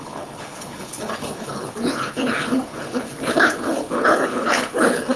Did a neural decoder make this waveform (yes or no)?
yes